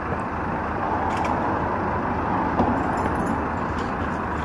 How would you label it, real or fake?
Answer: real